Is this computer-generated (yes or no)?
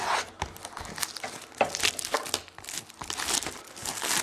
no